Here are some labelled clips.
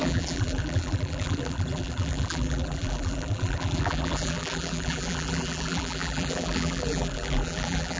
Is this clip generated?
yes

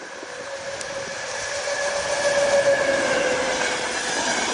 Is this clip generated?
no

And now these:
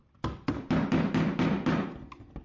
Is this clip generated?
no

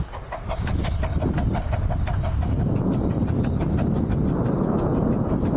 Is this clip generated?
no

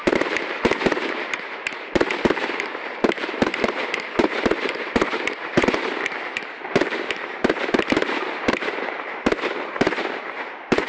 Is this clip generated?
yes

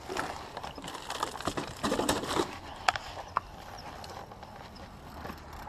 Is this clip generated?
no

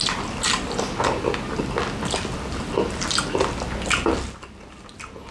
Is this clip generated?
no